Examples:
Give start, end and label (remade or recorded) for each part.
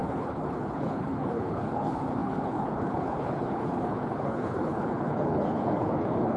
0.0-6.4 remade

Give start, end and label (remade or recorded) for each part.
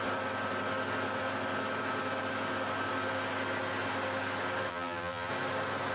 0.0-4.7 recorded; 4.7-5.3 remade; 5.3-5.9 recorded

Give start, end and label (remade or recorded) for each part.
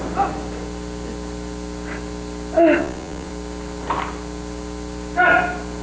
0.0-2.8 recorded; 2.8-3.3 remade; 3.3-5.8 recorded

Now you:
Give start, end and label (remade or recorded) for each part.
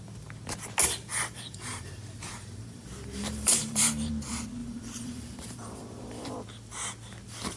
0.0-1.1 recorded; 1.1-4.1 remade; 4.1-4.6 recorded; 4.6-6.3 remade; 6.3-7.6 recorded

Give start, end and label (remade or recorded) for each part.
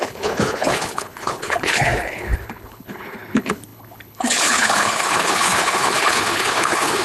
0.0-7.0 remade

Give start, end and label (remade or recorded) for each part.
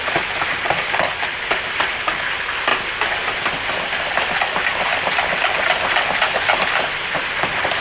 0.0-7.8 recorded